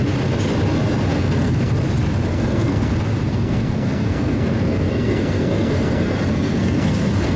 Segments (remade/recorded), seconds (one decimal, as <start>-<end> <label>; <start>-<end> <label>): 0.0-1.1 recorded; 1.1-1.7 remade; 1.7-2.3 recorded; 2.3-2.9 remade; 2.9-3.3 recorded; 3.3-7.4 remade